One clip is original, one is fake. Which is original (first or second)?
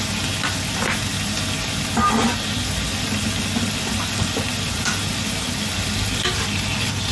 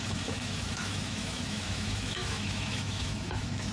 first